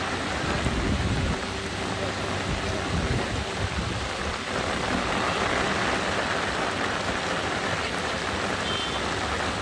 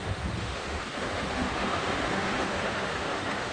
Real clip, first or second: first